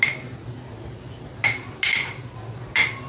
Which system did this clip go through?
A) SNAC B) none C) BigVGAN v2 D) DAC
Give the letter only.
B